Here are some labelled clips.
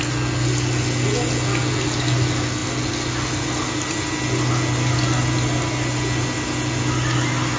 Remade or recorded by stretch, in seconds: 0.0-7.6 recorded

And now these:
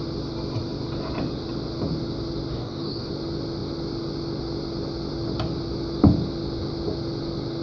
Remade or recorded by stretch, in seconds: 0.0-2.5 recorded; 2.5-3.1 remade; 3.1-7.6 recorded

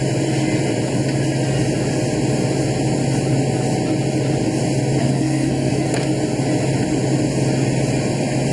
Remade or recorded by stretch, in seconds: 0.0-5.0 recorded; 5.0-5.9 remade; 5.9-8.5 recorded

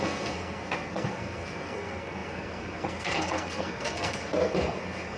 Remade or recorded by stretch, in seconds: 0.0-5.2 remade

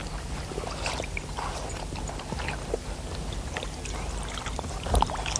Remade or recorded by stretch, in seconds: 0.0-5.4 recorded

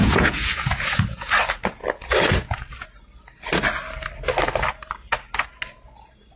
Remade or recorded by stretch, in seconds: 0.0-1.3 remade; 1.3-6.4 recorded

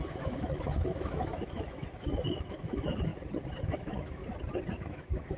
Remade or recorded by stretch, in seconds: 0.0-3.1 remade; 3.1-3.6 recorded; 3.6-4.2 remade; 4.2-4.7 recorded; 4.7-5.4 remade